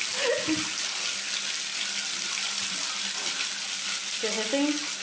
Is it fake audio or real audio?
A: real